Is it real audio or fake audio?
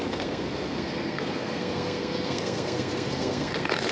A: fake